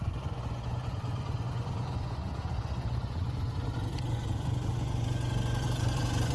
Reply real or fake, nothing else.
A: fake